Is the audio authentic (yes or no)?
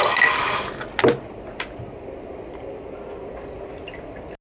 yes